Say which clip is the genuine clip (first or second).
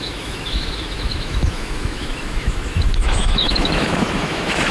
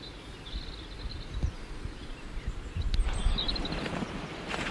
second